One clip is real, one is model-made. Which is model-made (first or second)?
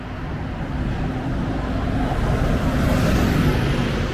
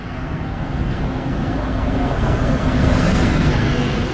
second